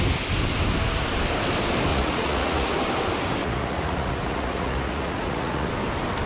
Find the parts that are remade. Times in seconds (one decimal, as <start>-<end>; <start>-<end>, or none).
1.9-2.7; 3.4-5.7